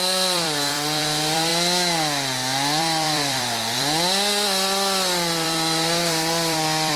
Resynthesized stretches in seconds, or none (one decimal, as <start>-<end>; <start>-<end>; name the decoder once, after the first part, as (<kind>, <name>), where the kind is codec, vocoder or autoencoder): 0.0-1.5 (vocoder, BigVGAN v2); 2.8-7.0